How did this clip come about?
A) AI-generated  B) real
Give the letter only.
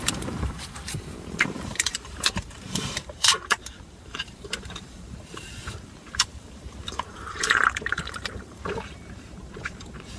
A